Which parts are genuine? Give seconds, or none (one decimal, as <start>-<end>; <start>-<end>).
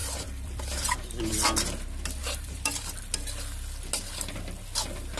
1.3-2.2; 2.7-5.2